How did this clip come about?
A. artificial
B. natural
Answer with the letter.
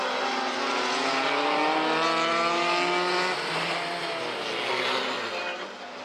B